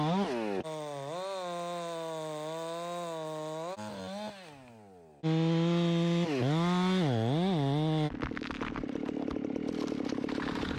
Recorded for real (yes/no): yes